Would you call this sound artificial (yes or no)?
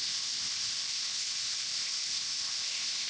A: yes